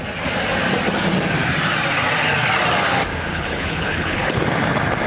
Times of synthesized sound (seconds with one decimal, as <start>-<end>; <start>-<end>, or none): 3.3-4.4